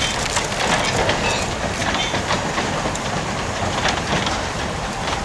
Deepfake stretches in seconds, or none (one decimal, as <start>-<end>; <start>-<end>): 1.8-5.2